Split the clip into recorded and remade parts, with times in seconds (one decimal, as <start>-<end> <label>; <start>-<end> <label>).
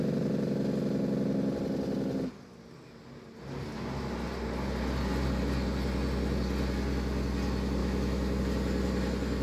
0.0-7.8 recorded; 7.8-8.4 remade; 8.4-9.4 recorded